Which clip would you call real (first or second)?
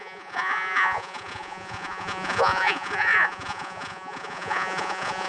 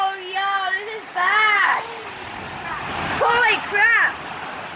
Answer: second